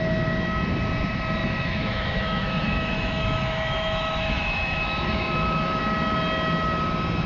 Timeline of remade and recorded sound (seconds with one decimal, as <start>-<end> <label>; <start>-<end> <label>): 0.0-1.4 recorded; 1.4-5.8 remade; 5.8-7.3 recorded